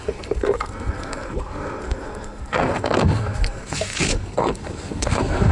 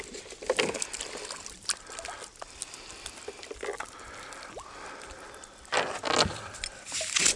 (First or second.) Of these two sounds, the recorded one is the second